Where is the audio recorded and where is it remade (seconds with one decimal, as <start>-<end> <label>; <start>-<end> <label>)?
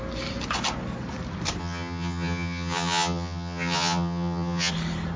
0.0-1.6 recorded; 1.6-4.7 remade; 4.7-5.2 recorded